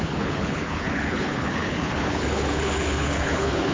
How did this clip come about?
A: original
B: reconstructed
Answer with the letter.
B